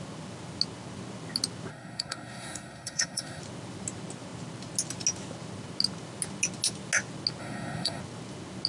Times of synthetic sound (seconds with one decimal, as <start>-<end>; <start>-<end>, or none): 1.7-3.4; 7.4-8.0